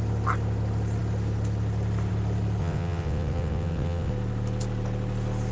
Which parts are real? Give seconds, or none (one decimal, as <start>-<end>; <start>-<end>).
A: 0.0-2.6; 4.1-5.5